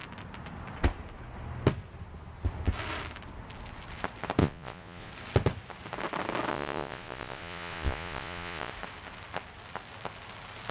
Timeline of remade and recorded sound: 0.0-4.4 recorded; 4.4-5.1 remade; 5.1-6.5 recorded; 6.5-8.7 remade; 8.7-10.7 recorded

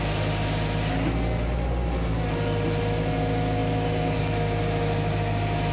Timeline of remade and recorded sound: 0.0-5.7 recorded

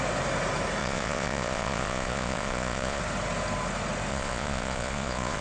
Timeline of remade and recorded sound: 0.0-0.8 recorded; 0.8-3.0 remade; 3.0-4.1 recorded; 4.1-5.4 remade

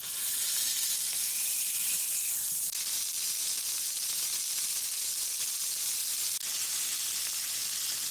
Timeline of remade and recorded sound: 0.0-8.1 recorded

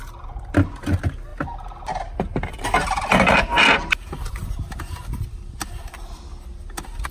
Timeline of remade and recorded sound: 0.0-7.1 recorded

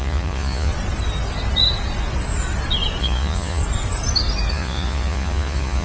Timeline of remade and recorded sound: 0.0-0.7 remade; 0.7-3.0 recorded; 3.0-3.6 remade; 3.6-4.5 recorded; 4.5-5.8 remade